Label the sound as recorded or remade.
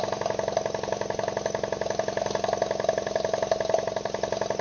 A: recorded